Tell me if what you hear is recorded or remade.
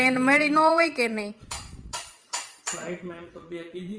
remade